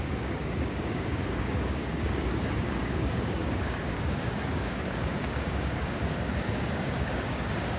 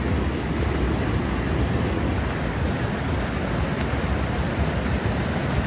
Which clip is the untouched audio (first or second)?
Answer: second